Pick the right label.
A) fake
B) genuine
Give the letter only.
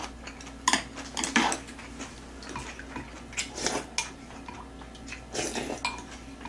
B